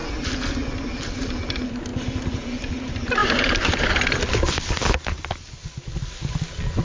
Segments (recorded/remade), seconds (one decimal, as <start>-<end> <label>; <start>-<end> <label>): 0.0-6.8 recorded